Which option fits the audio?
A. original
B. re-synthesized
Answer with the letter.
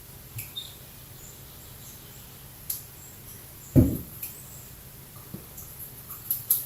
B